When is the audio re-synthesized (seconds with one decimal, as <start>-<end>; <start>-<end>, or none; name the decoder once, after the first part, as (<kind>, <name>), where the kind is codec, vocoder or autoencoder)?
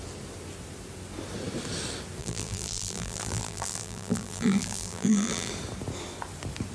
2.2-5.5 (vocoder, BigVGAN v2)